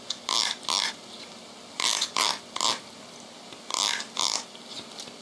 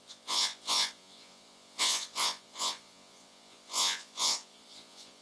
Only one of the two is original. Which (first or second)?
first